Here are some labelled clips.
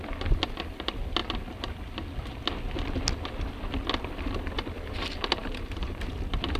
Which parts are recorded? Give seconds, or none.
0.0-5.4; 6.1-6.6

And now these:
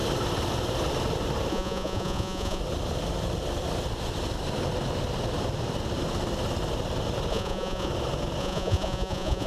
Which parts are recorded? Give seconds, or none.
0.0-1.5; 2.6-7.3; 7.9-8.4

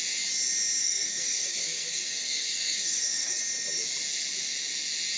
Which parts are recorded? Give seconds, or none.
0.0-0.8; 3.4-5.2

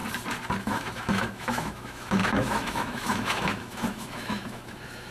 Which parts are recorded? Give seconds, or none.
0.0-0.6

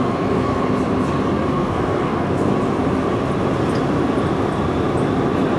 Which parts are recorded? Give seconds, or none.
0.6-1.5; 2.5-5.6

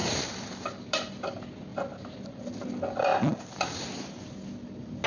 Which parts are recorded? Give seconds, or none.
0.8-5.1

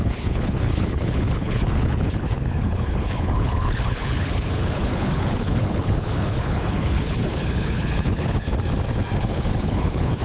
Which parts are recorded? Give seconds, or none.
8.5-9.2